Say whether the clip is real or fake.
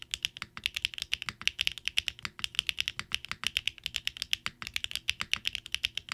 real